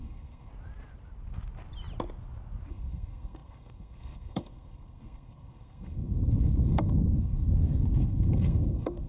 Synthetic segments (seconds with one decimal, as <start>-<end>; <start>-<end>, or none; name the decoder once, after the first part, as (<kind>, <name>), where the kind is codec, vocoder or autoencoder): 0.0-0.5 (codec, SNAC); 2.7-9.1